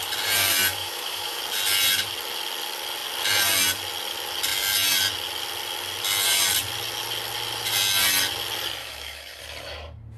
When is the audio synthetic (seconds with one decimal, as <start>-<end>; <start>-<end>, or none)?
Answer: 0.7-1.4; 8.8-9.4